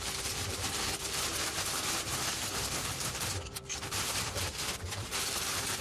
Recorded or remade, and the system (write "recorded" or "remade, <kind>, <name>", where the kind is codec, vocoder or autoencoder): remade, vocoder, BigVGAN v2